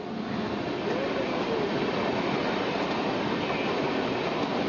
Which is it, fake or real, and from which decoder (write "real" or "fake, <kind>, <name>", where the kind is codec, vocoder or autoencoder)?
real